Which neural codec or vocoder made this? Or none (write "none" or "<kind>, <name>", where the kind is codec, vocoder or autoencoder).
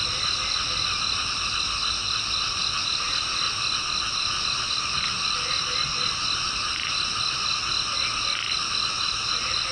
none